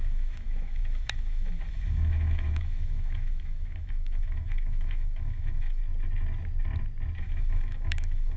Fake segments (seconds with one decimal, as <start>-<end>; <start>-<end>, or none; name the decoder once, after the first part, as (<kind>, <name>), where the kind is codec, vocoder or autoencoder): 0.0-5.8 (autoencoder, DAC-VAE); 7.2-8.4